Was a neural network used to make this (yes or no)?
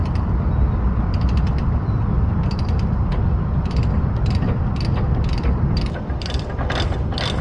no